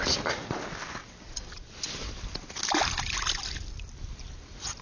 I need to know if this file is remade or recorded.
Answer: recorded